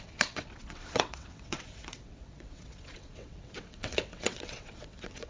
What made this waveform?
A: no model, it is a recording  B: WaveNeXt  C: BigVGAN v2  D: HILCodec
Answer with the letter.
B